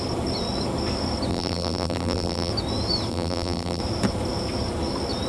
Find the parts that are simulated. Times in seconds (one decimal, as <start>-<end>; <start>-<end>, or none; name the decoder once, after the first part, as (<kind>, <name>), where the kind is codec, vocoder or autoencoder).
1.3-2.5 (vocoder, BigVGAN v2); 3.1-3.8